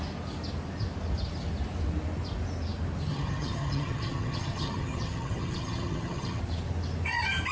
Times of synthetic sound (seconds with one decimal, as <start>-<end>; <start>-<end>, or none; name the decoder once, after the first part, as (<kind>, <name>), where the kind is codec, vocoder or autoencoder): 3.1-6.4 (vocoder, HiFi-GAN)